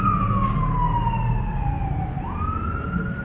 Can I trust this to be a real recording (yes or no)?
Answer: yes